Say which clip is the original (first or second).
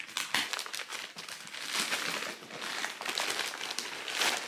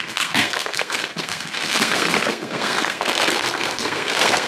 first